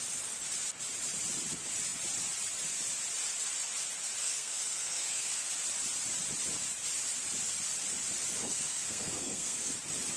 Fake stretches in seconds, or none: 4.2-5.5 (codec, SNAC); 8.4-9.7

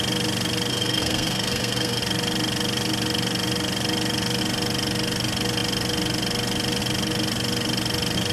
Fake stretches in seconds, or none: 0.7-2.0 (codec, SNAC)

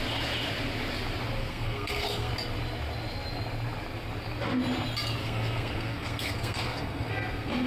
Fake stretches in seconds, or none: 1.4-2.3 (codec, SNAC); 5.2-7.7

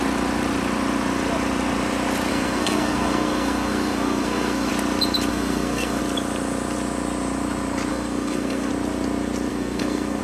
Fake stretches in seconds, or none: 2.3-4.7 (codec, SNAC); 5.3-6.0; 7.9-8.7; 9.5-10.2

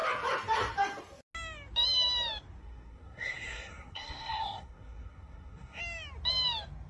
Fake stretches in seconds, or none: 2.6-5.8 (codec, SNAC)